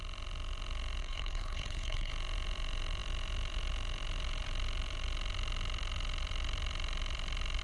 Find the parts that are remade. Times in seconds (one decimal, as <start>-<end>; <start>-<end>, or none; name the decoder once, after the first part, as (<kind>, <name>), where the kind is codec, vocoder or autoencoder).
1.0-2.1 (codec, HILCodec)